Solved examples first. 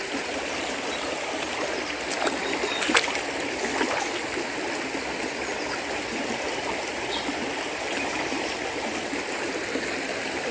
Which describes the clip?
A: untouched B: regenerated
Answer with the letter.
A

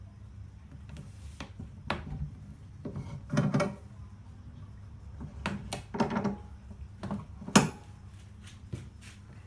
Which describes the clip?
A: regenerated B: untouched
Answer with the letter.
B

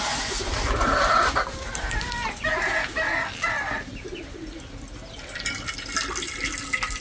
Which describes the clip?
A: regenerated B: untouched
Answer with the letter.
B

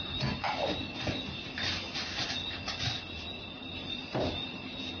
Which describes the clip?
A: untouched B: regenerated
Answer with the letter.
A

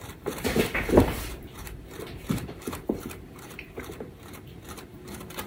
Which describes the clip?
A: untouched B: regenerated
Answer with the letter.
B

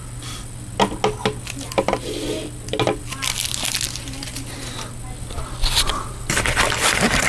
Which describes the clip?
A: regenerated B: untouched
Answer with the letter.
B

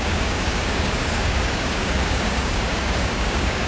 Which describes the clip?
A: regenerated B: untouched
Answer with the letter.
A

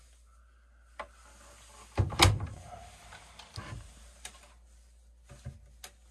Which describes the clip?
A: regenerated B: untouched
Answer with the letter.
B